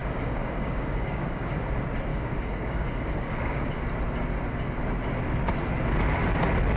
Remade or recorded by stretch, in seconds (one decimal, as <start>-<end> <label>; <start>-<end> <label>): 0.0-1.5 remade; 1.5-2.1 recorded; 2.1-3.7 remade; 3.7-6.8 recorded